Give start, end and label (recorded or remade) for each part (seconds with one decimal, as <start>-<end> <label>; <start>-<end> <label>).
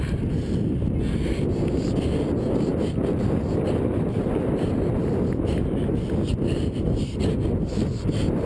0.0-8.5 recorded